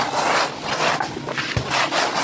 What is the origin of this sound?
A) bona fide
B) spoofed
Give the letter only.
A